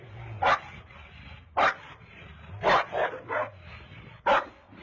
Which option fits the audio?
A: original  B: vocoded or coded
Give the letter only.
A